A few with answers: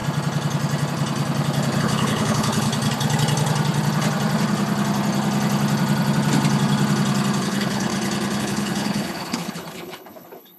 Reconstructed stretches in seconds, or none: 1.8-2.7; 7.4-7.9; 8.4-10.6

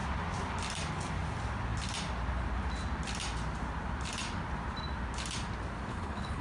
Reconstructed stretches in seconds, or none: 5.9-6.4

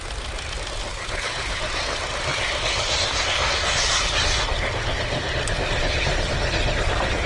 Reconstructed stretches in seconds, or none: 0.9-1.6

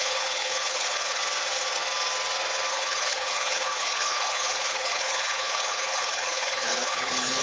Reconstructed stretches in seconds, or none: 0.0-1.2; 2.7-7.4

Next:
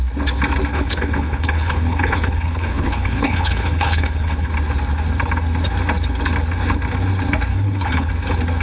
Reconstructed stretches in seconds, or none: 0.7-4.5; 7.5-8.1

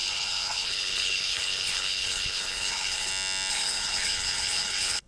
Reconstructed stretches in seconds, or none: 0.0-3.1; 3.5-5.1